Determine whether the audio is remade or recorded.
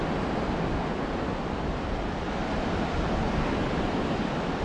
recorded